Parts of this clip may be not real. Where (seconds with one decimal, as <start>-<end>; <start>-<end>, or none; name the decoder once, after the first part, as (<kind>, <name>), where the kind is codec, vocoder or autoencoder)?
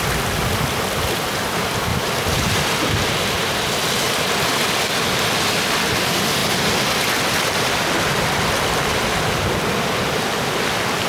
1.9-3.0 (vocoder, BigVGAN v2)